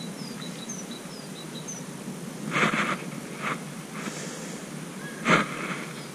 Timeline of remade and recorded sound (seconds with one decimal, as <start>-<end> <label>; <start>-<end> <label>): 0.0-1.6 remade; 1.6-4.6 recorded; 4.6-6.1 remade